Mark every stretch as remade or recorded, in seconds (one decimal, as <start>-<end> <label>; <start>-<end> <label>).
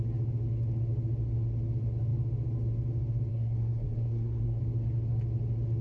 0.0-3.3 recorded; 3.3-4.6 remade; 4.6-5.8 recorded